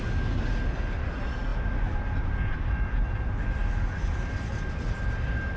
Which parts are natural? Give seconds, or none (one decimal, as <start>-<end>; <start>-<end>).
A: 0.0-5.6